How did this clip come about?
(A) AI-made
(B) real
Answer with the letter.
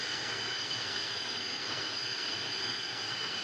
A